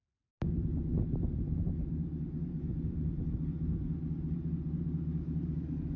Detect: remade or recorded recorded